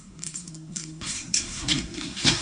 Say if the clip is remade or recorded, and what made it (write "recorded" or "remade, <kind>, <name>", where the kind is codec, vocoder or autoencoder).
remade, codec, SNAC